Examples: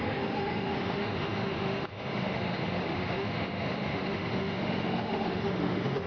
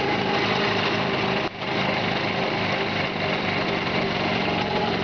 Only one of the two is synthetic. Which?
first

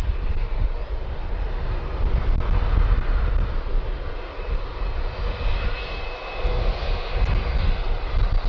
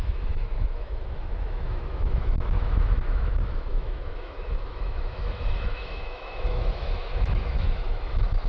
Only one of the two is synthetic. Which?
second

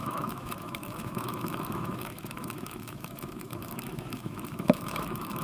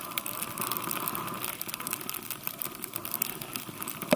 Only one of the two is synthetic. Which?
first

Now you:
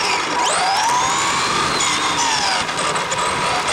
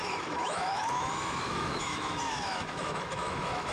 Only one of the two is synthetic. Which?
second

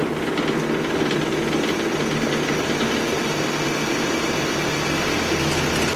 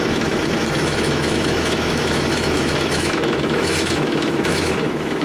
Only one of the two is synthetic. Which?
second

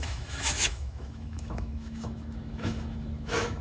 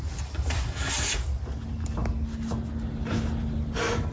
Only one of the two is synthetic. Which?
first